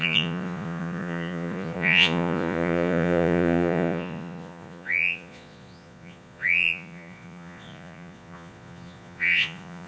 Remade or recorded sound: remade